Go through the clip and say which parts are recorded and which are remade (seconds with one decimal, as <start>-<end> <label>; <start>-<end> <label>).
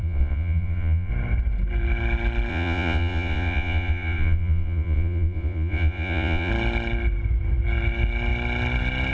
0.0-1.1 remade; 1.1-2.5 recorded; 2.5-6.5 remade; 6.5-9.1 recorded